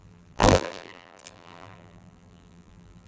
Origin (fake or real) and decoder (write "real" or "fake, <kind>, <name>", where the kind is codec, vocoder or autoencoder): fake, vocoder, BigVGAN v2